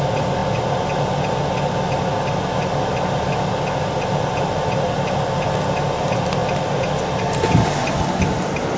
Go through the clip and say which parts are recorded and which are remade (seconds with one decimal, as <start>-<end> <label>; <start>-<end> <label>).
0.0-8.8 recorded